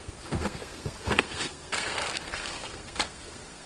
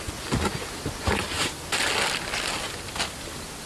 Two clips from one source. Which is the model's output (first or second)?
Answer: first